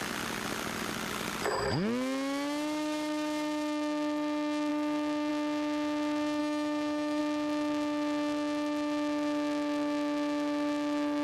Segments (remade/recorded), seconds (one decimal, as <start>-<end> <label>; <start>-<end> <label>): 0.0-6.4 recorded; 6.4-7.2 remade; 7.2-11.2 recorded